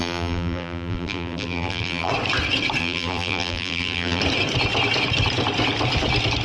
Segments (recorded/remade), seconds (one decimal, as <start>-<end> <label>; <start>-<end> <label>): 0.0-2.1 remade; 2.1-2.8 recorded; 2.8-4.2 remade; 4.2-6.4 recorded